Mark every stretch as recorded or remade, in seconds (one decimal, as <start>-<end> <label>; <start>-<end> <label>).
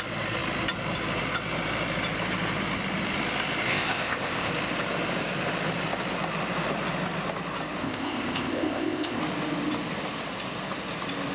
0.0-3.7 recorded; 3.7-4.5 remade; 4.5-7.8 recorded; 7.8-9.2 remade; 9.2-11.3 recorded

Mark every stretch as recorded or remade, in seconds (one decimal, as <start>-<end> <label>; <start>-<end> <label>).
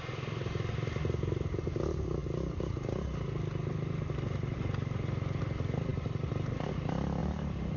0.0-7.8 recorded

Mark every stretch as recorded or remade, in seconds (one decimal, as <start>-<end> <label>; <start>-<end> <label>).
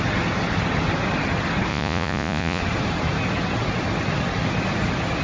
0.0-1.7 recorded; 1.7-2.6 remade; 2.6-5.2 recorded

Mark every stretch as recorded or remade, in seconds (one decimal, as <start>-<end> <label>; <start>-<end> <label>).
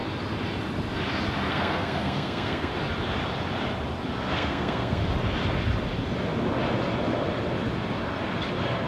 0.0-1.5 recorded; 1.5-2.7 remade; 2.7-4.3 recorded; 4.3-5.0 remade; 5.0-8.9 recorded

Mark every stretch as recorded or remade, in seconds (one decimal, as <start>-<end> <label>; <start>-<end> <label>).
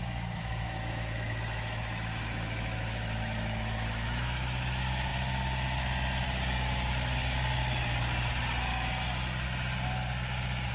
0.0-5.1 remade; 5.1-10.7 recorded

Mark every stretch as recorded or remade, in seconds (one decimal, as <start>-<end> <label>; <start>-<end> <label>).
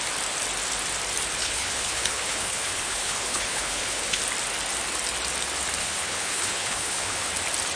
0.0-1.4 recorded; 1.4-4.2 remade; 4.2-5.8 recorded; 5.8-7.3 remade; 7.3-7.8 recorded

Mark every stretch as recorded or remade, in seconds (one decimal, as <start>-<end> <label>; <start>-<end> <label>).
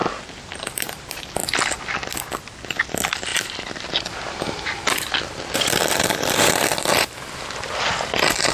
0.0-1.2 remade; 1.2-8.5 recorded